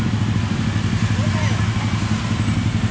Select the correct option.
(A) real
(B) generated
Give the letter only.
A